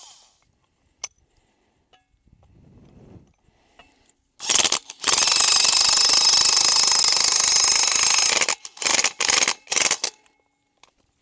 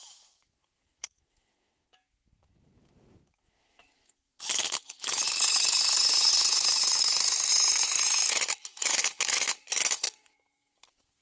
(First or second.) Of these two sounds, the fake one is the second